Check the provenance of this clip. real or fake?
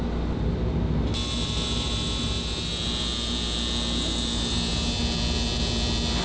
real